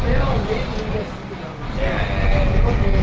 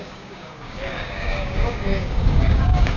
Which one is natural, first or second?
first